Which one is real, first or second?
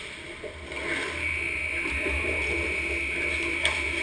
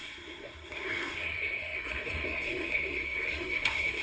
first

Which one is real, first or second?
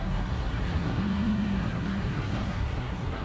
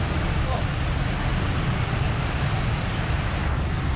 second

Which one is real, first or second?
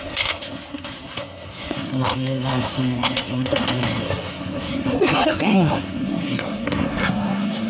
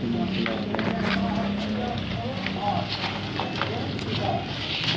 second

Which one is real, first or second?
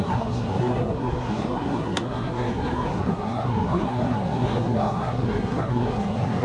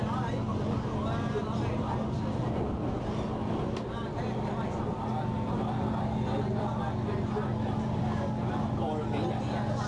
second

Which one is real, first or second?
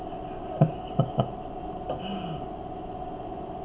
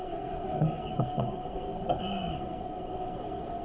first